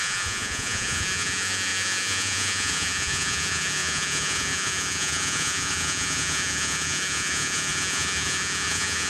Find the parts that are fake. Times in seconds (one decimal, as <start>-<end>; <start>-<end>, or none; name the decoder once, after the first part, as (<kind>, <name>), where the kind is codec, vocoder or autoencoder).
0.0-9.1 (vocoder, Vocos)